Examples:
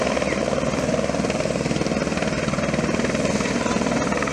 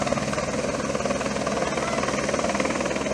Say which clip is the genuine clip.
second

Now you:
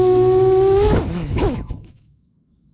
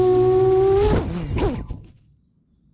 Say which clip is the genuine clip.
second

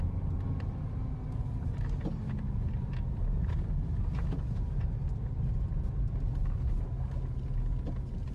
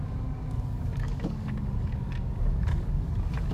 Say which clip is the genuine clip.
first